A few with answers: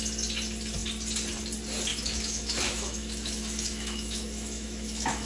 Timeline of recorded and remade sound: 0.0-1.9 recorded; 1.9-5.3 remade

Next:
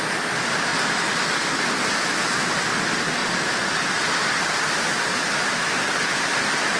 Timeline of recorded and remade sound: 0.0-6.8 recorded

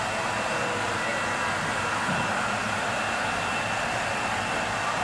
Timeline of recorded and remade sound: 0.0-5.0 recorded

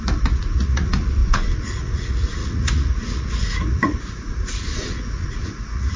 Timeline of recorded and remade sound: 0.0-6.0 remade

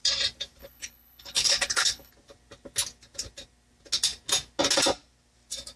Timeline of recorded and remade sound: 0.0-0.6 recorded; 0.6-2.1 remade; 2.1-5.8 recorded

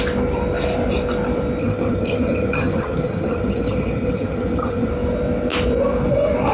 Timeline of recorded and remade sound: 0.0-1.6 recorded; 1.6-4.9 remade; 4.9-6.5 recorded

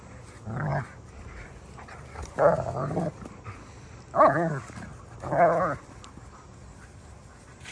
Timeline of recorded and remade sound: 0.0-7.7 recorded